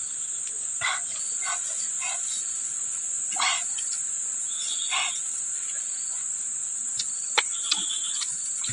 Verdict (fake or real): real